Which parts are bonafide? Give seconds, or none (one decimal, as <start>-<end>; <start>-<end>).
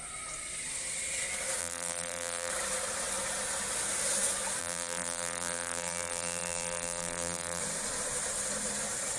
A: 0.0-1.6; 2.5-4.6; 7.6-9.2